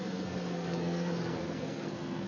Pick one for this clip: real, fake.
fake